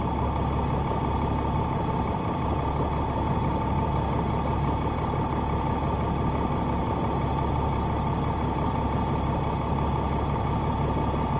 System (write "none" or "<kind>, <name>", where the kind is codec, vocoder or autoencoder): none